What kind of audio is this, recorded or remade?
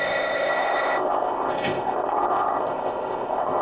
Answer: remade